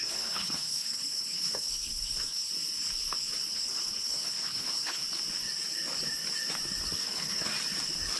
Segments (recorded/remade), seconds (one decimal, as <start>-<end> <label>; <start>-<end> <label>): 0.0-2.5 remade; 2.5-3.5 recorded; 3.5-5.0 remade; 5.0-7.0 recorded; 7.0-7.5 remade; 7.5-8.2 recorded